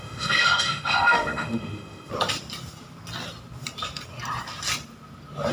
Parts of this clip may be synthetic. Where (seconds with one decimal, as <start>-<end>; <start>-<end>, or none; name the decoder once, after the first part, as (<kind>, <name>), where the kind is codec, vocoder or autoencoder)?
0.0-2.1 (autoencoder, DAC-VAE)